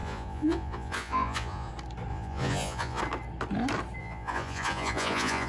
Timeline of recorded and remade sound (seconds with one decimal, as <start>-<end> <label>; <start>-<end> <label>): 0.0-1.7 remade; 1.7-2.1 recorded; 2.1-3.0 remade; 3.0-4.0 recorded; 4.0-5.5 remade